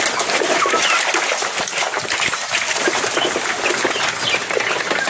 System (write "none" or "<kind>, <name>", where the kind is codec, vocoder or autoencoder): none